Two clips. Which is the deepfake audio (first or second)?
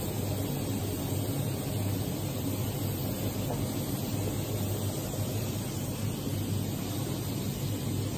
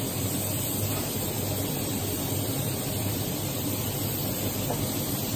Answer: second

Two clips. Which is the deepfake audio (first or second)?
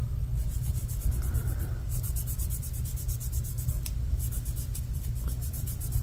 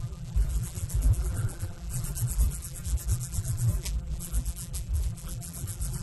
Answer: second